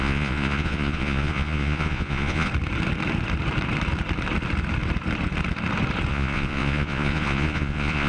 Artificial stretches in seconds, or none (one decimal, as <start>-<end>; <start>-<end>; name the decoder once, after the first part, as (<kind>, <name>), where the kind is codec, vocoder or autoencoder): 0.0-2.5 (vocoder, Vocos); 6.1-8.1